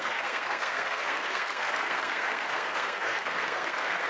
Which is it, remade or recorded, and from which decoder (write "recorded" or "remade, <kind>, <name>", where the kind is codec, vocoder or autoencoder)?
remade, codec, SNAC